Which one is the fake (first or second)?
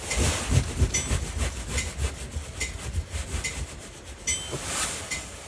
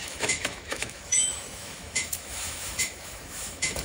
second